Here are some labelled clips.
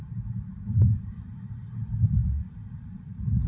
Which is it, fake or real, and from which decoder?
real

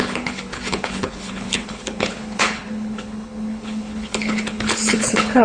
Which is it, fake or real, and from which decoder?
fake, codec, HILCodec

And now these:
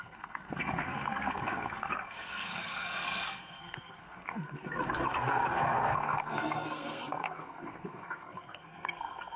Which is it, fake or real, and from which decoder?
fake, codec, SNAC